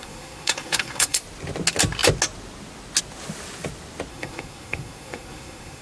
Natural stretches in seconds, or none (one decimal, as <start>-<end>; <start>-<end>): 1.2-4.1